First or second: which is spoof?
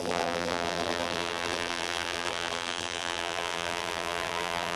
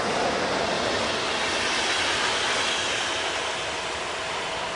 first